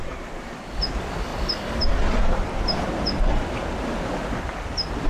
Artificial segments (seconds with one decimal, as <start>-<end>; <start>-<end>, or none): none

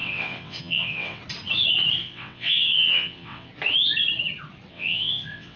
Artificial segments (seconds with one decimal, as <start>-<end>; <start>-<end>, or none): 0.0-1.2; 2.0-3.5; 4.7-5.6